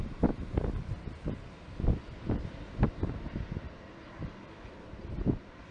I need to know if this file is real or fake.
real